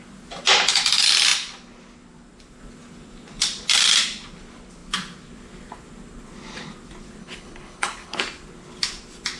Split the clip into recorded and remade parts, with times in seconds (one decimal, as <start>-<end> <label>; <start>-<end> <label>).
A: 0.0-7.2 recorded; 7.2-8.2 remade; 8.2-9.4 recorded